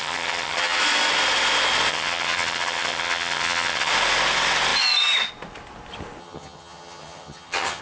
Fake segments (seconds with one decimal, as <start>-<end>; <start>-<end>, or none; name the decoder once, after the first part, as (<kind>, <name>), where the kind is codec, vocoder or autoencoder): 0.0-0.8 (vocoder, HiFi-GAN); 1.9-3.9; 6.2-7.8